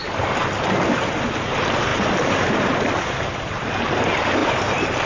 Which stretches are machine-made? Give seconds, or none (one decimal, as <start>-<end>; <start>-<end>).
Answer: 0.4-1.2; 1.9-3.7; 4.4-5.1